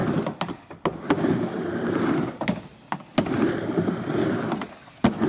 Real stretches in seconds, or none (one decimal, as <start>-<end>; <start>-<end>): 0.0-5.3